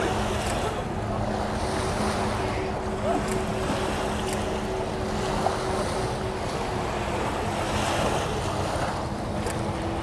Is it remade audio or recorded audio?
recorded